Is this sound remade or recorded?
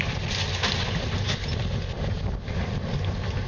recorded